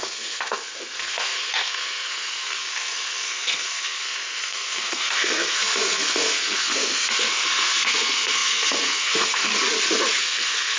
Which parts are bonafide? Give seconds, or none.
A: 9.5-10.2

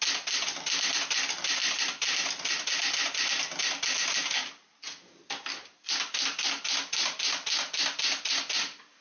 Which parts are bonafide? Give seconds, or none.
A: 0.0-9.0

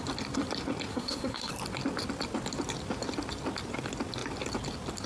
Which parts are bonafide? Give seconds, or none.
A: 0.0-0.9; 1.5-5.1

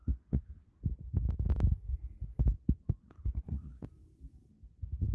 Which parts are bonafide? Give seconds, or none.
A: 0.8-3.0; 3.8-5.1

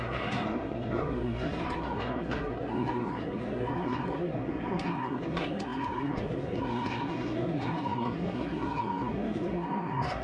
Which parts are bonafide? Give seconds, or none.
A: none

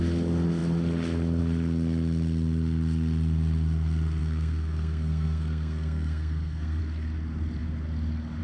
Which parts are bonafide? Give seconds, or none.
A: 0.0-4.2; 6.8-8.4

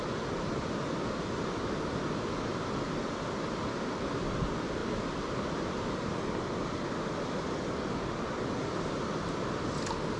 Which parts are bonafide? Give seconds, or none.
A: 0.0-10.2